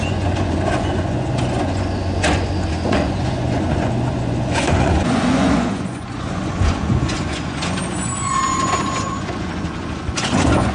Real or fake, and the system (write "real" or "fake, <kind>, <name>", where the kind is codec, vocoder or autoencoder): fake, vocoder, Vocos